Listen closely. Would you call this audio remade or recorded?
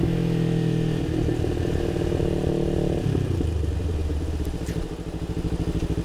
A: recorded